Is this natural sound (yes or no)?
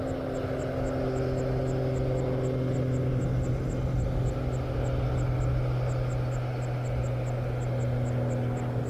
yes